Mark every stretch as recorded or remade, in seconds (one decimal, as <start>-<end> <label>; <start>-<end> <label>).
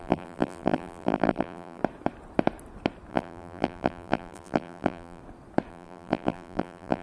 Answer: 0.0-1.8 remade; 1.8-3.1 recorded; 3.1-5.2 remade; 5.2-5.7 recorded; 5.7-7.0 remade